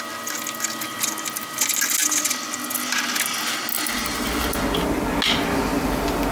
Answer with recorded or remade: recorded